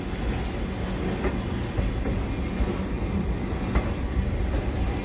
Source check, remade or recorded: recorded